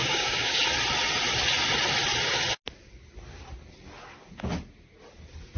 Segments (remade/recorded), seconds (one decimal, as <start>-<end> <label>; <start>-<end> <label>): 0.0-0.6 remade; 0.6-5.6 recorded